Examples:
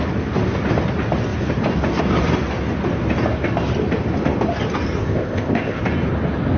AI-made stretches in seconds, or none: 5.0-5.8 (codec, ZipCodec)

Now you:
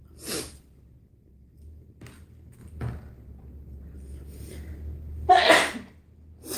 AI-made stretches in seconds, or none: none